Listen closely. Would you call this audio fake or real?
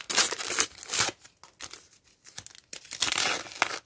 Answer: real